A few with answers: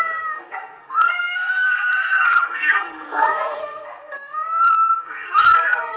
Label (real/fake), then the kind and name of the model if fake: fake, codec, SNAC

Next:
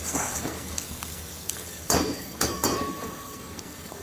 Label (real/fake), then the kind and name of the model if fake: fake, codec, SNAC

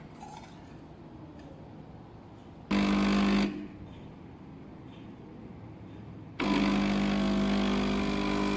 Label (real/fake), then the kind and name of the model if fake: real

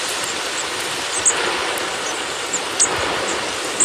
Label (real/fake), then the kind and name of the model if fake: real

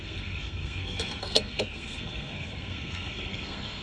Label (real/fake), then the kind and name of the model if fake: fake, codec, SNAC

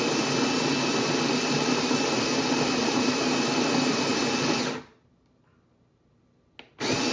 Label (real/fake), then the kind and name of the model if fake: real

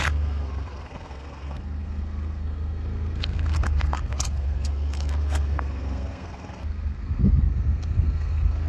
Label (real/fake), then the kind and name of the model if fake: fake, codec, SNAC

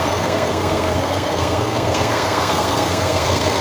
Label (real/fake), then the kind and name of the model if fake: fake, codec, SNAC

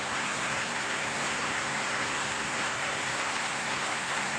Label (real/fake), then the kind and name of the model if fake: fake, codec, SNAC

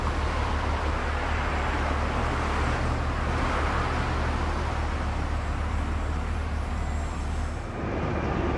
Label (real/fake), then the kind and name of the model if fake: real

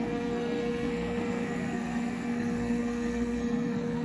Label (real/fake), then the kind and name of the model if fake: fake, codec, SNAC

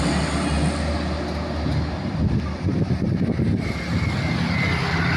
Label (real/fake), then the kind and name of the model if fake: real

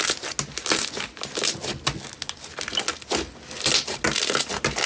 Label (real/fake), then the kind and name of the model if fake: real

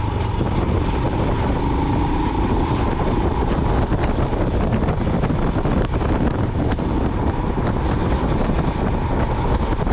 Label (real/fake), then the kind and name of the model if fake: real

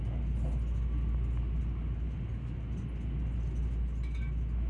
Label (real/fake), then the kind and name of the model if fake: real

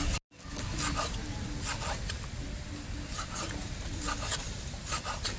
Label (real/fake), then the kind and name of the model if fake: real